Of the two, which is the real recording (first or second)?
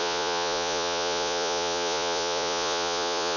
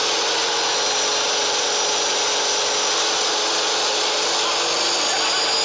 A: second